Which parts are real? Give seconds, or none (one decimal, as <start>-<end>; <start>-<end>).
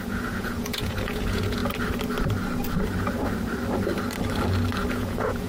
1.6-4.9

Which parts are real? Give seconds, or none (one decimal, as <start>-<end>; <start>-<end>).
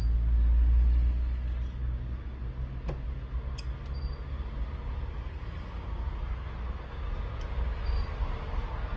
0.0-9.0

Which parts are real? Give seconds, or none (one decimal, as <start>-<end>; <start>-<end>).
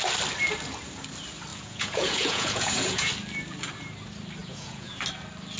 0.0-1.5; 3.1-4.4; 5.0-5.6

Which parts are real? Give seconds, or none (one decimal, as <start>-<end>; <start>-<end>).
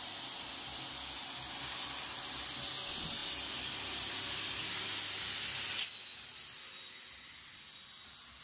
0.0-8.4